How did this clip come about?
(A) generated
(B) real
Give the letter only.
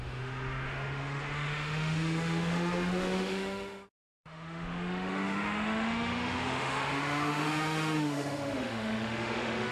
A